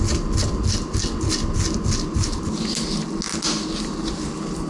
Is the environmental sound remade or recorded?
recorded